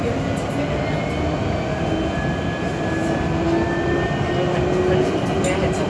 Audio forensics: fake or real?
real